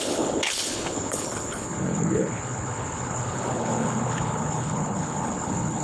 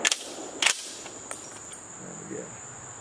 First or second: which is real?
second